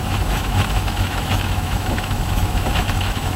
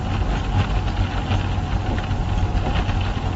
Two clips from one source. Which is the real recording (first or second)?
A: second